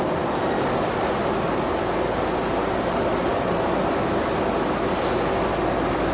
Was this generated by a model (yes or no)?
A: no